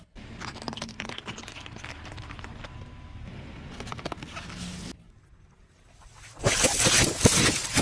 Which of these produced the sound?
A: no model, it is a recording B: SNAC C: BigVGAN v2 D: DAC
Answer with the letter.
A